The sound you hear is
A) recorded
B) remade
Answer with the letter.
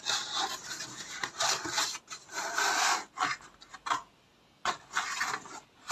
A